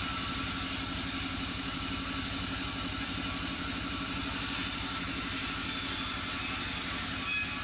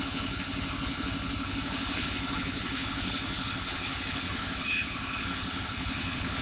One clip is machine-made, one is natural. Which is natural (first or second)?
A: first